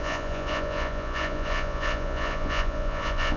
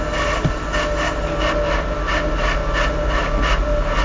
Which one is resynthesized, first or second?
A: first